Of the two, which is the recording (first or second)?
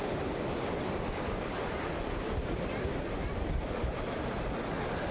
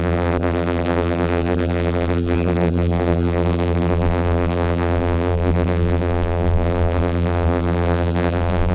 first